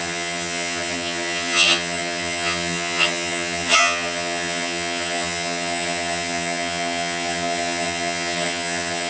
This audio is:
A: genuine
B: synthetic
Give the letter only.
B